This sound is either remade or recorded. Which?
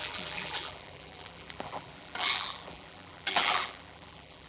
remade